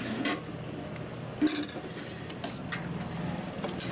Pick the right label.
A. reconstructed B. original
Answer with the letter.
B